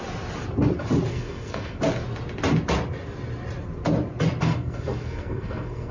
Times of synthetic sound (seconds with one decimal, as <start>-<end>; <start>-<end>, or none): 1.1-1.8; 4.4-5.9